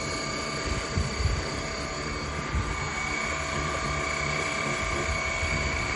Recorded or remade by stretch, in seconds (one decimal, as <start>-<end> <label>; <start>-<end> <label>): 0.0-6.0 recorded